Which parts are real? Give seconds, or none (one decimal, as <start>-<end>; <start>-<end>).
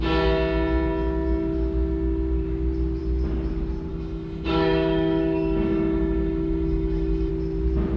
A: 0.0-3.9; 7.3-8.0